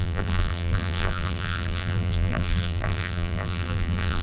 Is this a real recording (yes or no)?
no